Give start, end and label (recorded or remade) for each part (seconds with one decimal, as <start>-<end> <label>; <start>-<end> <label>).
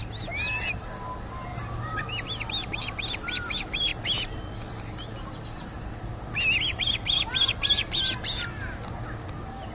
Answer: 0.0-1.5 recorded; 1.5-2.0 remade; 2.0-9.7 recorded